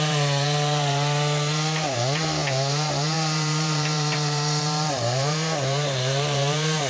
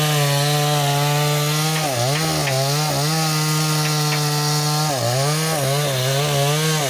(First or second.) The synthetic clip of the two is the first